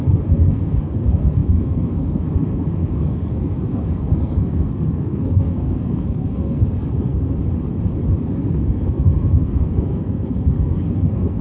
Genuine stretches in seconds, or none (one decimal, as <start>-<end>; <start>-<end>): 7.4-8.2